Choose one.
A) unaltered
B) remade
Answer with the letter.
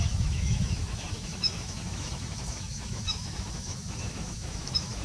B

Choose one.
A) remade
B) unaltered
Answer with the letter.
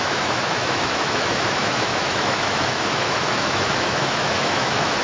A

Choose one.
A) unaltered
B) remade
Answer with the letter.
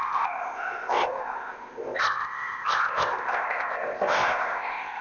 B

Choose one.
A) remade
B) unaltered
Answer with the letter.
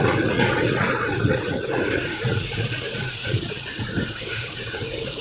A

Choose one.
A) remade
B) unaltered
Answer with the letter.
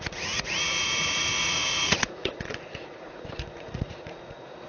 A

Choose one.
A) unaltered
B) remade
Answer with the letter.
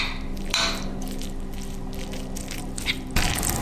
A